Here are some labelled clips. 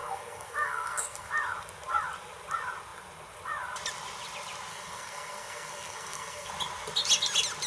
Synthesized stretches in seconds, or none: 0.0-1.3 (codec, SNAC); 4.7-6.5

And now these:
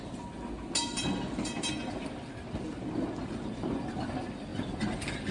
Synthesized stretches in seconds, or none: none

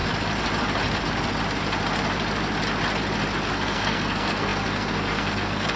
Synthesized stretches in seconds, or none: 3.5-5.8 (codec, SNAC)

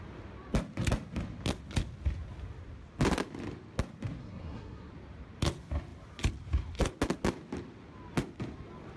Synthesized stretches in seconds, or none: 4.2-4.9 (codec, SNAC)